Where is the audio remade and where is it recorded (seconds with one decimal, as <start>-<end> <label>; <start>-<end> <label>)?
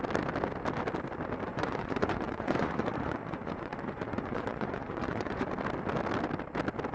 0.0-1.5 recorded; 1.5-5.5 remade; 5.5-6.9 recorded